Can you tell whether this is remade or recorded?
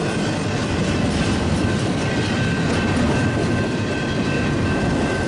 remade